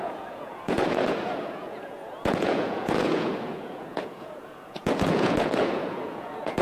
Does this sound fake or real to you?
fake